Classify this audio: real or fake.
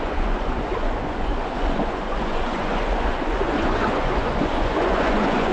fake